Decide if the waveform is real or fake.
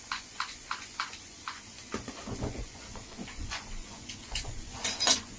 fake